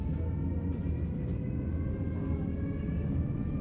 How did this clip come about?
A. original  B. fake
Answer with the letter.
A